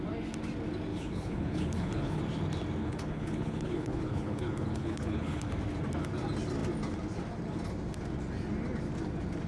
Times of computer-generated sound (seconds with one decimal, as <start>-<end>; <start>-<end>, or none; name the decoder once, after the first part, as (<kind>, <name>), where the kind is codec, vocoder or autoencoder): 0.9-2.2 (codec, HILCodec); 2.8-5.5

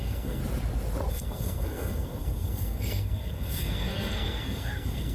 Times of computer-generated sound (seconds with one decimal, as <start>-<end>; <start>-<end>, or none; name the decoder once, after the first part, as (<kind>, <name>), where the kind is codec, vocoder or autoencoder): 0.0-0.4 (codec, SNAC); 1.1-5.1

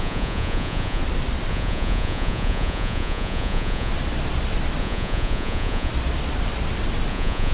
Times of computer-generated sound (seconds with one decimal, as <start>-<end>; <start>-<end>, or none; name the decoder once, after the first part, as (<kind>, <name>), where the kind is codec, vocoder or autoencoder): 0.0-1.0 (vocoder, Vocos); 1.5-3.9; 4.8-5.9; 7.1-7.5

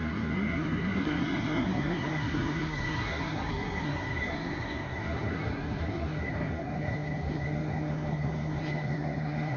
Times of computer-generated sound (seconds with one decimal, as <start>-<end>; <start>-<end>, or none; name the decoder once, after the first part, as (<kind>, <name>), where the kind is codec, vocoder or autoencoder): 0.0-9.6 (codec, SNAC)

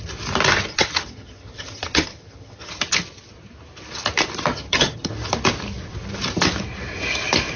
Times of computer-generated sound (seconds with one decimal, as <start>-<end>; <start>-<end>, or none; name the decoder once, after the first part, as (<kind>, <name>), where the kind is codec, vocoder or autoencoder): 0.7-2.7 (vocoder, HiFi-GAN); 4.5-5.1